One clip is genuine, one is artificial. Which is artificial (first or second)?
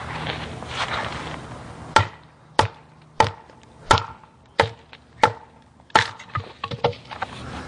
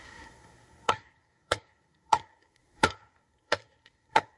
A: second